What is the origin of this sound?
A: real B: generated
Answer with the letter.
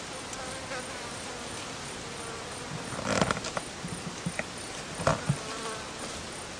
A